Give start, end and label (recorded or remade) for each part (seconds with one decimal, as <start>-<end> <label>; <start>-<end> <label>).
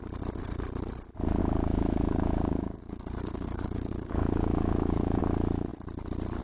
0.0-1.4 recorded; 1.4-5.2 remade; 5.2-6.4 recorded